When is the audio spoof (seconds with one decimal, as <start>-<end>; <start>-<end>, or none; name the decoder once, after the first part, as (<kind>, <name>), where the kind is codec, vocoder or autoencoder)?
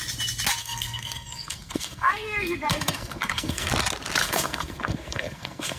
0.6-3.7 (codec, SNAC); 4.2-5.8